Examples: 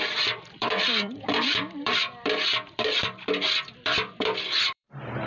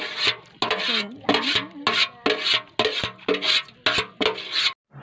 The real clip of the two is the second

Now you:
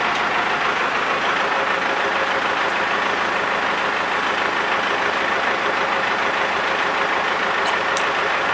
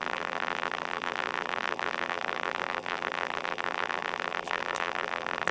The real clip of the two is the first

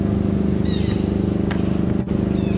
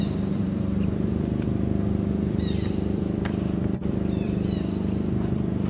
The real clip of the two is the first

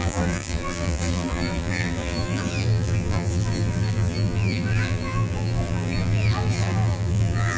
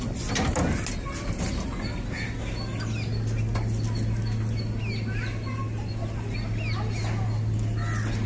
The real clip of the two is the second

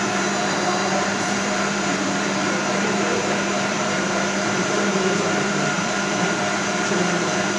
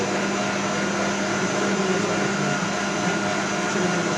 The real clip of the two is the second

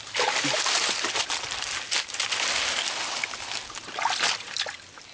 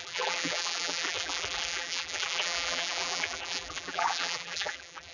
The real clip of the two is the first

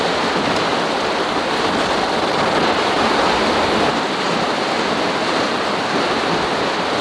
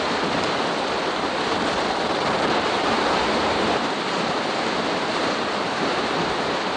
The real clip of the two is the first